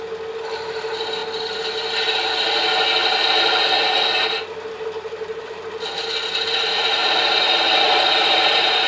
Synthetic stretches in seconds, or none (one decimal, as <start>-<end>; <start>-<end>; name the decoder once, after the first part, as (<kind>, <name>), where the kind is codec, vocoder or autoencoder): 7.0-8.9 (vocoder, BigVGAN v2)

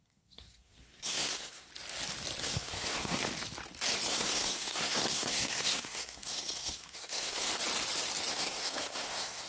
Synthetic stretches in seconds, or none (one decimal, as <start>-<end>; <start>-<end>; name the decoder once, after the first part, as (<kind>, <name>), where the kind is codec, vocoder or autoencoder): 0.0-1.7 (codec, SNAC); 2.4-3.2; 4.1-7.5; 8.3-9.5

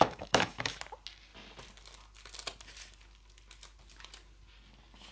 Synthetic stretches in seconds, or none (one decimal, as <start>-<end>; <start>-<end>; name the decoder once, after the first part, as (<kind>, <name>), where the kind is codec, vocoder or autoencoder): 0.0-0.8 (autoencoder, DAC-VAE)

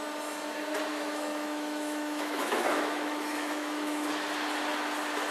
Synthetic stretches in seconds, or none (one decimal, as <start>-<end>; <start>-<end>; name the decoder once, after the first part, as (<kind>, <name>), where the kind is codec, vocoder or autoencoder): 0.9-4.1 (autoencoder, DAC-VAE)

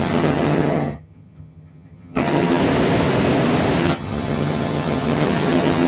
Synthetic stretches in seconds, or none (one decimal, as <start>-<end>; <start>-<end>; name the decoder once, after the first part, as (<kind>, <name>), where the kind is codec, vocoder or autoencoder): 0.0-2.6 (vocoder, HiFi-GAN); 3.8-5.9

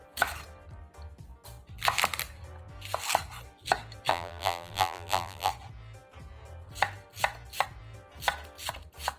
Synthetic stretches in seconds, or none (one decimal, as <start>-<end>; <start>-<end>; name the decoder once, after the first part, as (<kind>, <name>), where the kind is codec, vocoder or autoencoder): 4.1-5.5 (vocoder, BigVGAN v2)

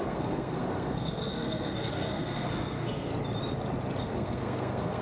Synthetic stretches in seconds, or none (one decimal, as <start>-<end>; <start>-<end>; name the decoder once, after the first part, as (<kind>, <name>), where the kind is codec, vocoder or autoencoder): 0.0-3.1 (codec, SNAC); 4.0-5.0

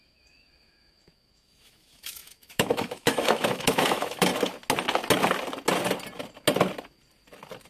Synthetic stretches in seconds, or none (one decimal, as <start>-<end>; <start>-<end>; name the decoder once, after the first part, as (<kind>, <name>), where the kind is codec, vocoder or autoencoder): 0.0-4.3 (autoencoder, DAC-VAE)